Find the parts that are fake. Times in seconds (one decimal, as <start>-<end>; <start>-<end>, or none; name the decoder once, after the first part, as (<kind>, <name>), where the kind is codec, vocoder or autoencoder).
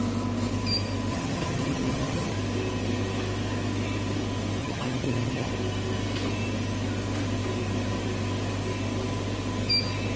1.1-2.3 (vocoder, HiFi-GAN); 4.6-5.5